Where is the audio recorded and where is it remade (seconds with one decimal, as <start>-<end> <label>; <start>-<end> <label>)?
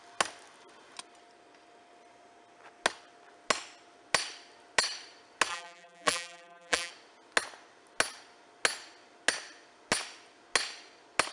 0.0-5.5 recorded; 5.5-6.9 remade; 6.9-11.3 recorded